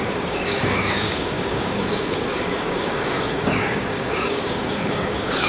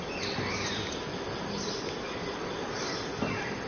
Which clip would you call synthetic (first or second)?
first